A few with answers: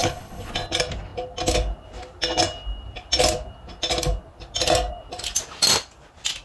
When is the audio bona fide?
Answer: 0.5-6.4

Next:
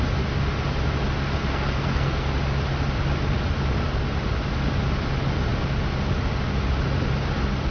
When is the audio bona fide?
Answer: 0.0-1.5; 2.3-7.7

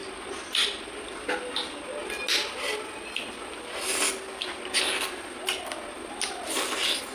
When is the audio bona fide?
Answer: 0.0-7.1